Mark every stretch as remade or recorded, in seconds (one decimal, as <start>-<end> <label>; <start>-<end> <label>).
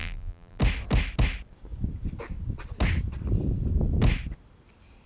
0.0-0.6 remade; 0.6-5.1 recorded